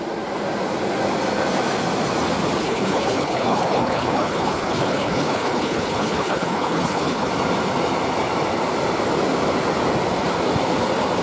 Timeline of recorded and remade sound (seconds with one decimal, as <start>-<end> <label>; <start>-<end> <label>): 0.0-2.6 recorded; 2.6-7.3 remade; 7.3-11.2 recorded